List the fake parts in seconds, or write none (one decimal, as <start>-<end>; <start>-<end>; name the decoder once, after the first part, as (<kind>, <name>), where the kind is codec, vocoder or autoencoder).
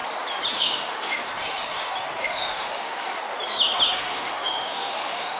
0.6-1.2 (autoencoder, DAC-VAE); 2.2-3.1; 4.0-5.4